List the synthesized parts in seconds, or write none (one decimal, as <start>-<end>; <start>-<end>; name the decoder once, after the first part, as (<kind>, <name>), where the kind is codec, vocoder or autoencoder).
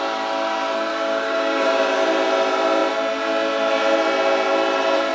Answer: 0.9-2.0 (codec, DAC)